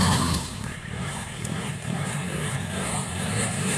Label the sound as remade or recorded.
remade